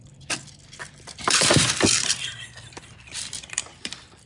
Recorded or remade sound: remade